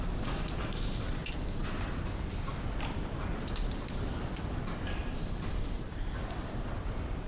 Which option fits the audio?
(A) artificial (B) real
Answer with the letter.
A